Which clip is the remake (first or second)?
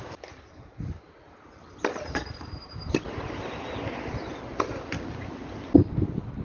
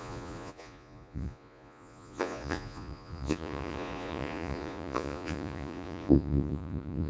second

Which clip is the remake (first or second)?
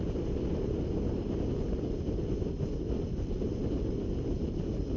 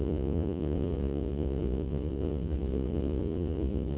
second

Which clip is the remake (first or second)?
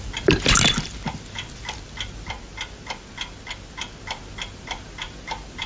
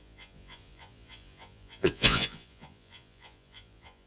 second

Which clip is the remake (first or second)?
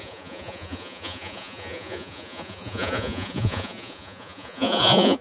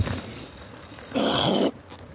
first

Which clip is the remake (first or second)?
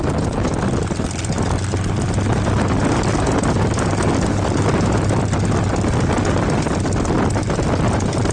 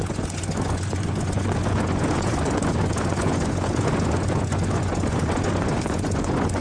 second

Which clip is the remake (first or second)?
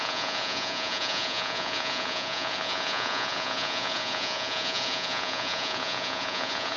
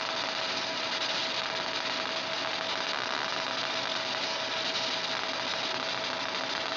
first